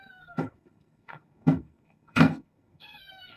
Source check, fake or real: fake